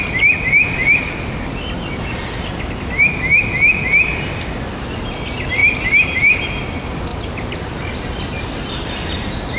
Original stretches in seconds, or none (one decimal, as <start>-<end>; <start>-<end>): 0.0-5.6; 6.6-7.1; 7.9-9.6